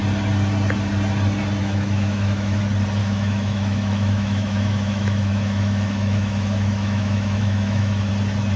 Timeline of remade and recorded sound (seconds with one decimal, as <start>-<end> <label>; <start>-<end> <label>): 0.0-1.6 recorded; 1.6-2.6 remade; 2.6-3.0 recorded; 3.0-8.1 remade; 8.1-8.6 recorded